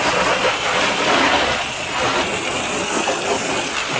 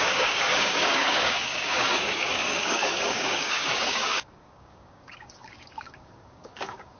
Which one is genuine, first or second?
first